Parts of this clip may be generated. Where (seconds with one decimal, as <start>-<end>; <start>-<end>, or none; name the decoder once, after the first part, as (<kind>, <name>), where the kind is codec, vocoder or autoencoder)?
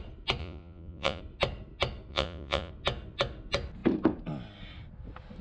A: 0.4-1.2 (vocoder, Vocos); 2.1-2.7